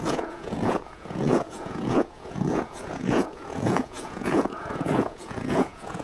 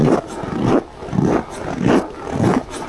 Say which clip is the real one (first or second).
second